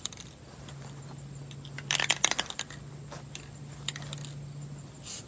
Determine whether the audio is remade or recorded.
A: recorded